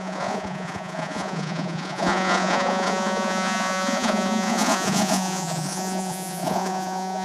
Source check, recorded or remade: remade